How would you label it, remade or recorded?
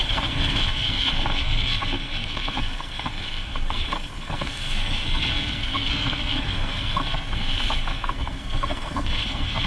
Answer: remade